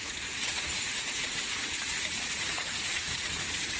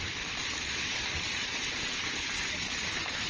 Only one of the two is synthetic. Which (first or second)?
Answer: first